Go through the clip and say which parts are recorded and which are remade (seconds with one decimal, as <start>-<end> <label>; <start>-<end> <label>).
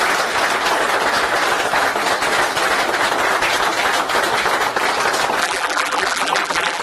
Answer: 0.0-5.4 recorded; 5.4-6.8 remade